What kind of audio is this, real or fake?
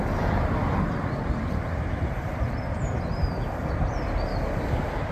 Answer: real